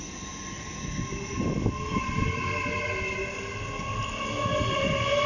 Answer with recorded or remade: recorded